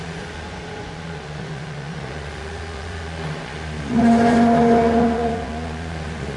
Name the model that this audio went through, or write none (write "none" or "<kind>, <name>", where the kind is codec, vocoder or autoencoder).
vocoder, Vocos